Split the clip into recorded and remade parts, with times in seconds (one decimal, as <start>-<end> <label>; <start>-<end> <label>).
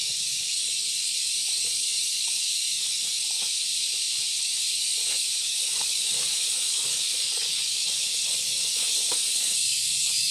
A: 0.0-3.7 remade; 3.7-4.4 recorded; 4.4-10.3 remade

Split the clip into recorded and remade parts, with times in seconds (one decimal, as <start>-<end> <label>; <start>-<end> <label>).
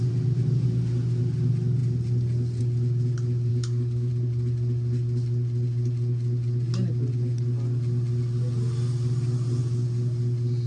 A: 0.0-3.5 recorded; 3.5-4.1 remade; 4.1-10.7 recorded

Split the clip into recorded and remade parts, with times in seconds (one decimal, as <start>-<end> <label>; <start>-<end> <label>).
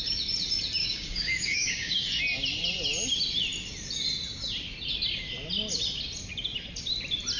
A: 0.0-0.8 recorded; 0.8-2.2 remade; 2.2-7.4 recorded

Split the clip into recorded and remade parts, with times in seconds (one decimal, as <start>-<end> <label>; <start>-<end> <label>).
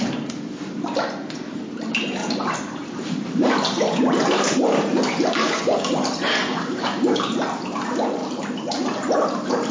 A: 0.0-5.4 recorded; 5.4-5.9 remade; 5.9-6.4 recorded; 6.4-7.3 remade; 7.3-9.7 recorded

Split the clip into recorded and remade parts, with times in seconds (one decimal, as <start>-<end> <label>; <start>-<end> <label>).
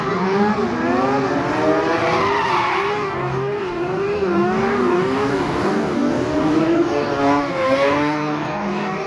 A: 0.0-0.5 remade; 0.5-2.9 recorded; 2.9-9.1 remade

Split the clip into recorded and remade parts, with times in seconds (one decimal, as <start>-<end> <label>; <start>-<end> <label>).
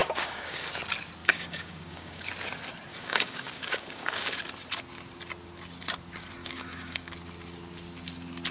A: 0.0-0.7 remade; 0.7-1.2 recorded; 1.2-2.3 remade; 2.3-2.9 recorded; 2.9-4.4 remade; 4.4-6.4 recorded; 6.4-7.1 remade; 7.1-8.5 recorded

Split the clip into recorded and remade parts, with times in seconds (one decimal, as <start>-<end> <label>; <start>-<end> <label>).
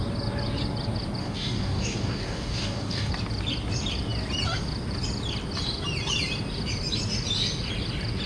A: 0.0-1.2 recorded; 1.2-3.1 remade; 3.1-8.3 recorded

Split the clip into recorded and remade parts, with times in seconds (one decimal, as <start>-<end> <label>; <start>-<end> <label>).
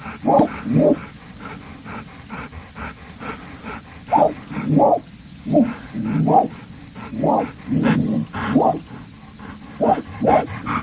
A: 0.0-5.3 recorded; 5.3-5.8 remade; 5.8-10.8 recorded